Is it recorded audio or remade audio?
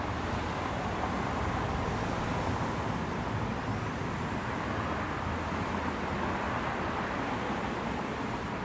recorded